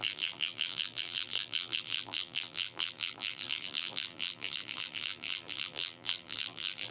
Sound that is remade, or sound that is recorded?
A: remade